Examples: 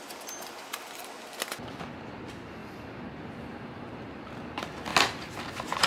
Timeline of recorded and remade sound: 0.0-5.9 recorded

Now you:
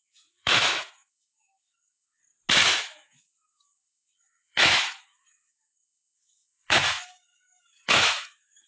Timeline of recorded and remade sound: 0.0-2.2 remade; 2.2-2.8 recorded; 2.8-8.7 remade

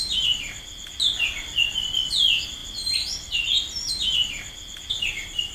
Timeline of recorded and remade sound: 0.0-5.5 recorded

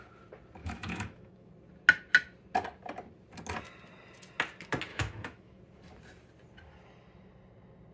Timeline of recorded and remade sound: 0.0-0.6 recorded; 0.6-1.5 remade; 1.5-4.9 recorded; 4.9-5.6 remade; 5.6-7.9 recorded

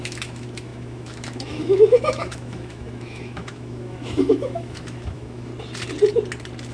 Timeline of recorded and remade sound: 0.0-5.5 remade; 5.5-6.7 recorded

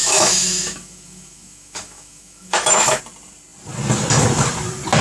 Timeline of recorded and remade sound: 0.0-3.0 remade; 3.0-5.0 recorded

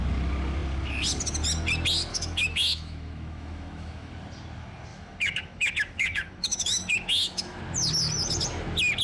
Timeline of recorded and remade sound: 0.0-2.1 recorded; 2.1-4.1 remade; 4.1-4.9 recorded; 4.9-7.6 remade; 7.6-9.0 recorded

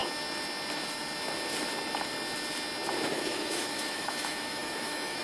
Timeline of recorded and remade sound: 0.0-3.1 recorded; 3.1-5.2 remade